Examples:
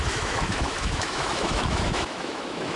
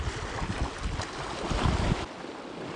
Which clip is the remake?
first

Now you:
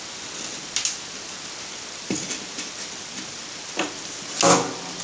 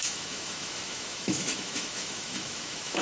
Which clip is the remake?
second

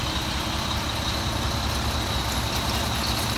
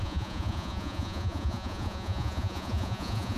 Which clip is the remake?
second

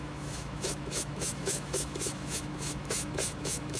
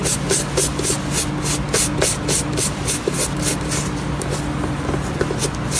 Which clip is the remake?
first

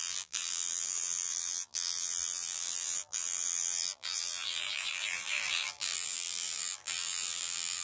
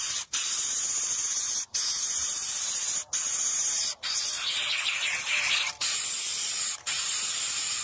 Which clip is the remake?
first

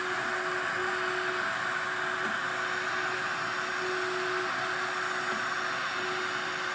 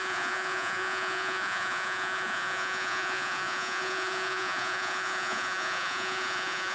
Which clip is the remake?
second